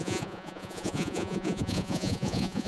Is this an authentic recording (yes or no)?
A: no